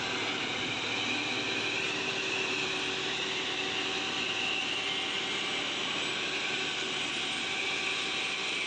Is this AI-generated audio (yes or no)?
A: no